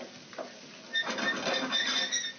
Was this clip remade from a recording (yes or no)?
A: no